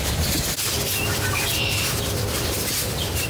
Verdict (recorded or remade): recorded